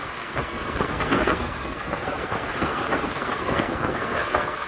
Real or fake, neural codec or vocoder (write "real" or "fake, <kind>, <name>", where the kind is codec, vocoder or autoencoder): fake, codec, SNAC